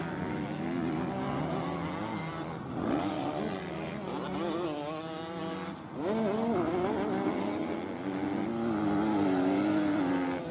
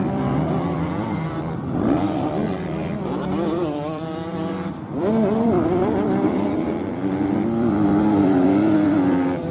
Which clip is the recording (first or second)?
first